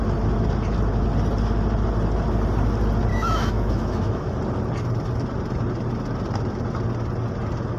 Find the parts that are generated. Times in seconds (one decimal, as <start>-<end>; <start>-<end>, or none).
3.1-4.3